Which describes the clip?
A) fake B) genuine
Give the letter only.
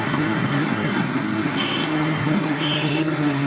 A